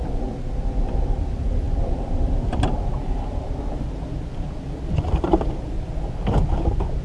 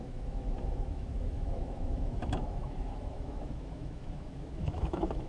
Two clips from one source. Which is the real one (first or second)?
first